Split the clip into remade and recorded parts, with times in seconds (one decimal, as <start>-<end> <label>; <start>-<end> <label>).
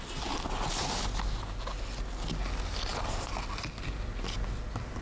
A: 0.0-5.0 recorded